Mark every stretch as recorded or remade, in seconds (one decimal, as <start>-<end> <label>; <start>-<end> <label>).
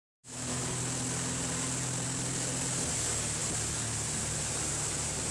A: 0.0-0.6 remade; 0.6-5.3 recorded